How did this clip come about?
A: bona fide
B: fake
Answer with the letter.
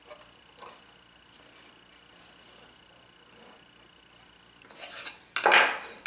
A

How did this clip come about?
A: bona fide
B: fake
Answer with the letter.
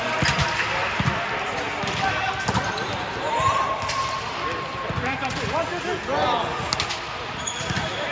A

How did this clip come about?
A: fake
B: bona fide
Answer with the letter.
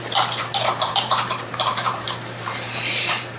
A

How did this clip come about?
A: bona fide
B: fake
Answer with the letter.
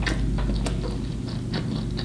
A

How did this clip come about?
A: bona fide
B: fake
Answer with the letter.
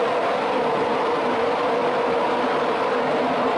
B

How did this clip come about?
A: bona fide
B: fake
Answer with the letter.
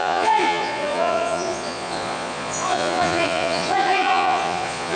B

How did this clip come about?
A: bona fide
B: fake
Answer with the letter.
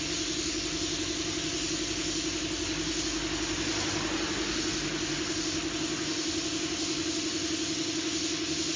A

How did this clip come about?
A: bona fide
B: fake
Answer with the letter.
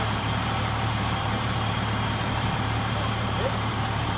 B